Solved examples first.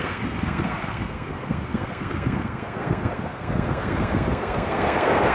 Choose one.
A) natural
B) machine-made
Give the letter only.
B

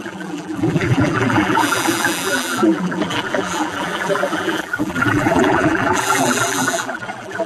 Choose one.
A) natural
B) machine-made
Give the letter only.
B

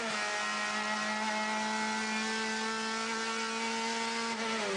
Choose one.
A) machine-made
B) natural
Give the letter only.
B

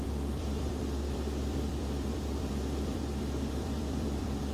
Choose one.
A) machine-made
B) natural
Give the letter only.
A